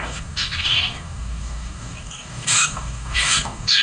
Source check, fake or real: fake